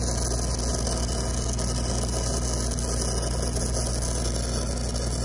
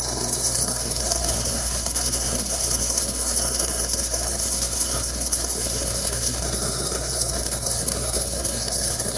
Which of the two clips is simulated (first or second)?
second